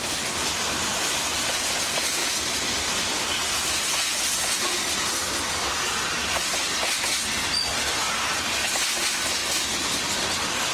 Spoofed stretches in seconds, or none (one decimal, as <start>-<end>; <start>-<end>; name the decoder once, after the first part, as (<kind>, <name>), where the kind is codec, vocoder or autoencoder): none